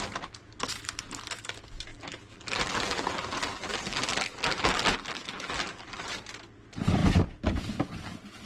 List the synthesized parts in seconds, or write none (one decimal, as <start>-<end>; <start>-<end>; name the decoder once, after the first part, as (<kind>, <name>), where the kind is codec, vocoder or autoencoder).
1.9-6.0 (vocoder, BigVGAN v2)